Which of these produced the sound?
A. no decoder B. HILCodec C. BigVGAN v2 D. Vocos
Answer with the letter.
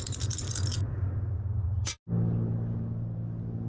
A